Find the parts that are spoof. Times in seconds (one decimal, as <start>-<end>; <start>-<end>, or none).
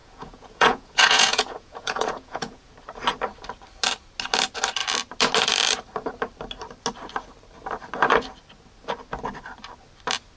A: 0.0-2.7